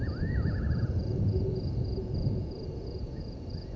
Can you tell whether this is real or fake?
fake